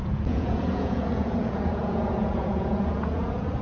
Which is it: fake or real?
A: fake